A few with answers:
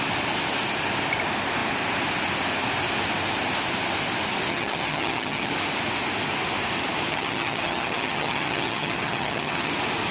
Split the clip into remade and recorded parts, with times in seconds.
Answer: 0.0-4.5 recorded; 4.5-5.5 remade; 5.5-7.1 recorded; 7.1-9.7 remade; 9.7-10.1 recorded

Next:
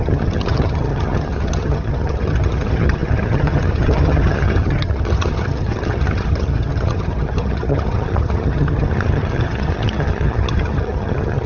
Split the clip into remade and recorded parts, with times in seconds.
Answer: 0.0-11.5 remade

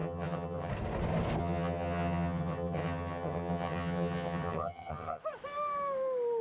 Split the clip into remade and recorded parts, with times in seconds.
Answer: 0.0-0.7 remade; 0.7-1.4 recorded; 1.4-5.2 remade; 5.2-6.4 recorded

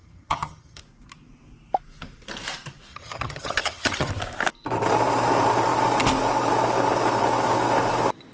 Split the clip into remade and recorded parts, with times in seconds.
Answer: 0.0-0.8 remade; 0.8-2.9 recorded; 2.9-4.1 remade; 4.1-8.3 recorded

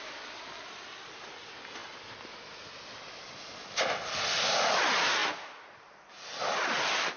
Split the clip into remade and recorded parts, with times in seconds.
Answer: 0.0-7.2 recorded

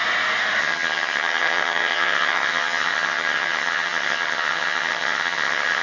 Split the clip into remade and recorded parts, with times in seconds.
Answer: 0.0-0.6 recorded; 0.6-5.8 remade

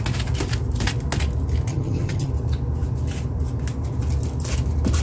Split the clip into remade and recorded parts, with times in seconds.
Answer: 0.0-1.7 recorded; 1.7-2.3 remade; 2.3-5.0 recorded